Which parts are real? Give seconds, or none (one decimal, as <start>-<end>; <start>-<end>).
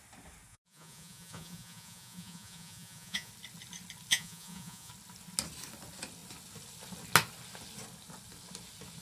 0.0-0.5; 3.3-4.1; 4.9-9.0